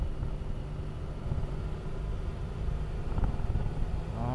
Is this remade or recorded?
recorded